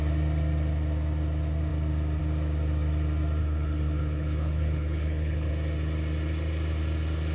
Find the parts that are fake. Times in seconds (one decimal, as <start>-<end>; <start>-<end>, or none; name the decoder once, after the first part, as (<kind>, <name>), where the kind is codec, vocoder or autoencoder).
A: 3.4-5.5 (codec, HILCodec)